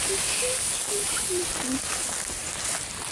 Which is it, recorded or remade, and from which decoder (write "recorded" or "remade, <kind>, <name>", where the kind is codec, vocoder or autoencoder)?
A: recorded